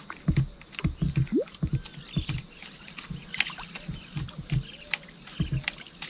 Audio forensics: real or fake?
real